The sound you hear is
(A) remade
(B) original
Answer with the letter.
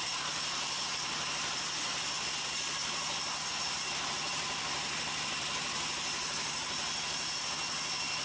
B